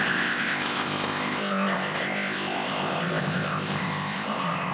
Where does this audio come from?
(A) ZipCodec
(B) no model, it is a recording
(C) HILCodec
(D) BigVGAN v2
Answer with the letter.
A